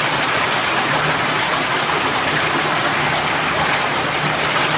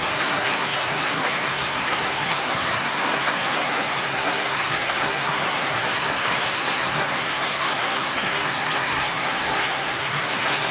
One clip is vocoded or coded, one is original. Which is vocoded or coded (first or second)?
second